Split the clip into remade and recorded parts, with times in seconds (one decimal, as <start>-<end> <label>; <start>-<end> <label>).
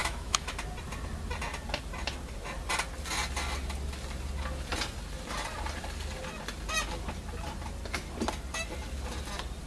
0.0-0.5 remade; 0.5-9.7 recorded